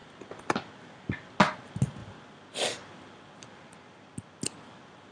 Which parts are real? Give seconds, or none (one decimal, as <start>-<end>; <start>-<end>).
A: 0.0-5.1